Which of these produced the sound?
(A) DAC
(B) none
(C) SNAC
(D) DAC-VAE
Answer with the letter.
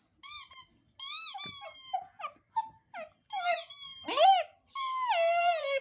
B